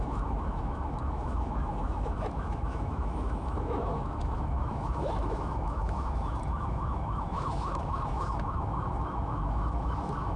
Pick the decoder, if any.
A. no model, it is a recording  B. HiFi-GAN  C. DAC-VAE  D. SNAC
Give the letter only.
C